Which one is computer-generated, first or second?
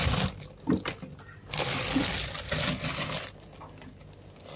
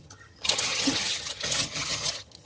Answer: second